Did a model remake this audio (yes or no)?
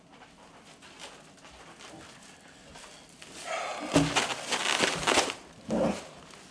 no